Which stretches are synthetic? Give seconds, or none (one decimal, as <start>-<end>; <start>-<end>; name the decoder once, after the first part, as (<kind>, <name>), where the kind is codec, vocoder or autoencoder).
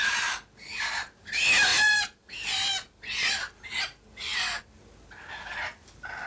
none